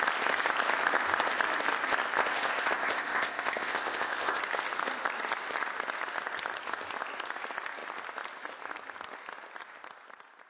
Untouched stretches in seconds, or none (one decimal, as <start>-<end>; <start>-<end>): 0.0-2.2; 4.4-10.5